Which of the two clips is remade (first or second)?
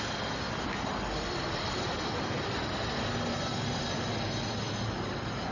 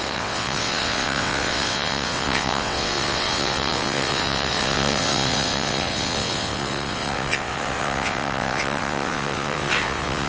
second